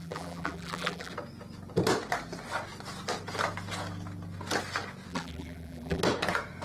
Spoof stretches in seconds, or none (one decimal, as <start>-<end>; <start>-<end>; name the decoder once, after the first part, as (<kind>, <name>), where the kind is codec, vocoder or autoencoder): 0.0-1.1 (vocoder, BigVGAN v2); 5.1-6.0